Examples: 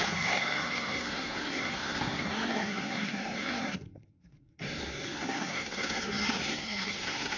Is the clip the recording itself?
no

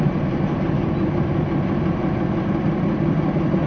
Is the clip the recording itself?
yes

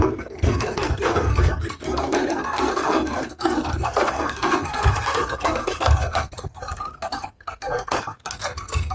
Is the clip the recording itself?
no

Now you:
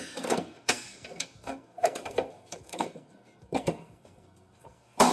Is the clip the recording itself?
no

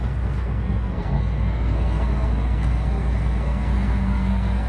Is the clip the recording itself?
no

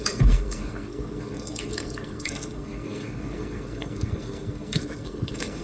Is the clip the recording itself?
no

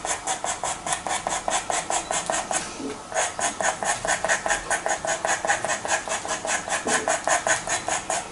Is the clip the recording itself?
yes